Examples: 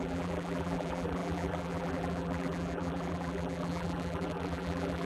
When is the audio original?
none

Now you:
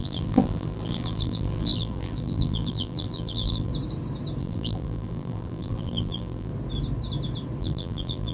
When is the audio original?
3.7-4.4; 6.5-7.6

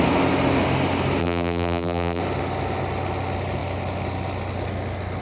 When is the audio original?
0.0-1.2; 2.2-5.2

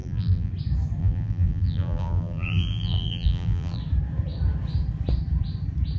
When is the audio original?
0.5-1.0; 3.8-6.0

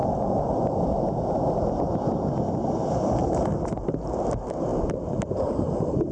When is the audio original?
0.0-3.2; 3.8-4.7

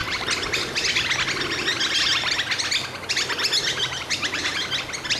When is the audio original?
0.0-5.2

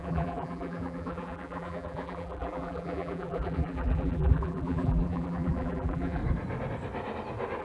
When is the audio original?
6.2-7.6

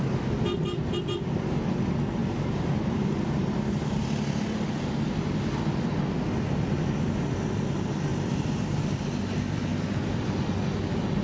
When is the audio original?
0.0-2.2; 3.0-8.1; 9.2-11.2